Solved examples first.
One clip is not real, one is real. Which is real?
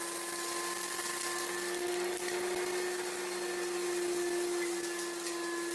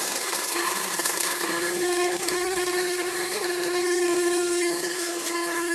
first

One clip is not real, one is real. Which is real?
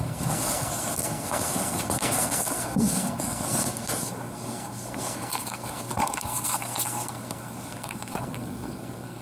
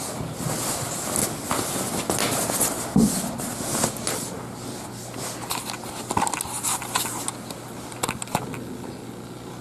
second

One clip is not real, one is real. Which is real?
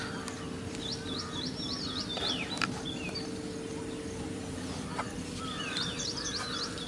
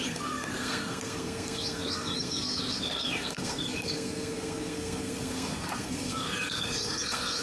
first